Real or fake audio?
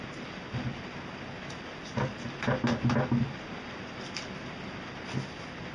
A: real